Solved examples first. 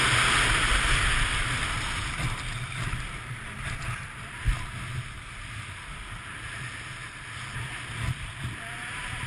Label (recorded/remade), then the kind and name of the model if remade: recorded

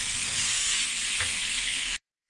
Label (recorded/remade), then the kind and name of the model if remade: remade, codec, SNAC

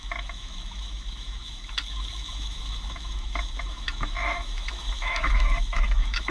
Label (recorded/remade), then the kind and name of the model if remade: remade, autoencoder, DAC-VAE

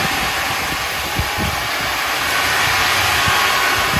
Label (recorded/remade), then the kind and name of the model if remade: recorded